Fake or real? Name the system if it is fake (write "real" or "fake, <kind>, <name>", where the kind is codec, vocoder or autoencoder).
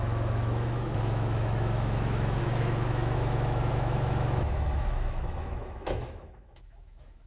fake, autoencoder, DAC-VAE